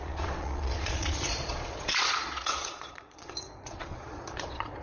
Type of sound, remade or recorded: remade